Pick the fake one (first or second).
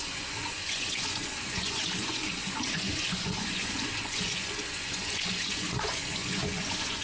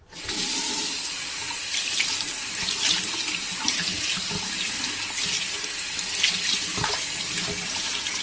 first